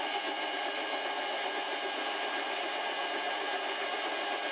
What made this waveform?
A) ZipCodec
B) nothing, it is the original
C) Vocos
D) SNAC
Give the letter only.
B